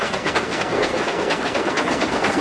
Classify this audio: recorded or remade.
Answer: remade